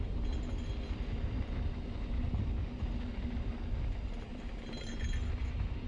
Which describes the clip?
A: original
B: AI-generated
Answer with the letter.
A